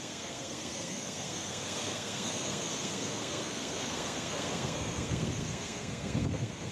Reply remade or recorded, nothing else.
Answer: remade